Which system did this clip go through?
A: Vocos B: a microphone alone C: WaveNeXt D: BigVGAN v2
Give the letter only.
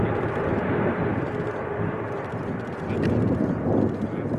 B